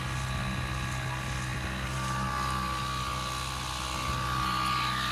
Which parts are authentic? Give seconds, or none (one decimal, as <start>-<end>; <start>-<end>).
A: 0.0-5.1